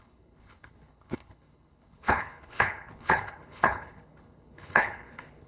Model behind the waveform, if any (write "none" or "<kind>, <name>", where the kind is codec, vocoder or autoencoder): codec, HILCodec